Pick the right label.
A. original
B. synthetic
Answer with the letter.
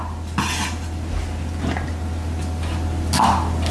A